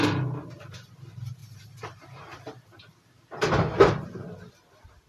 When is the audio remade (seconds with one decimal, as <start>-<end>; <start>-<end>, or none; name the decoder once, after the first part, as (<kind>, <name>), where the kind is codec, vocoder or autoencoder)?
1.4-4.5 (vocoder, BigVGAN v2)